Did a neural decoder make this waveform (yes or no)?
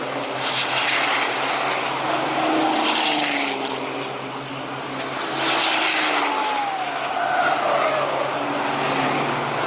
no